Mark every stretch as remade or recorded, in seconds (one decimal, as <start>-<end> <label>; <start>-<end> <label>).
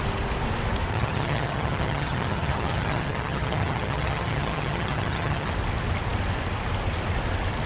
0.0-0.9 recorded; 0.9-5.5 remade; 5.5-7.7 recorded